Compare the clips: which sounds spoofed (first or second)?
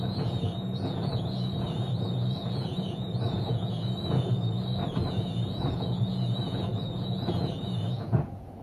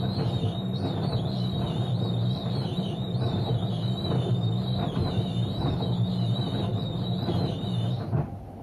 first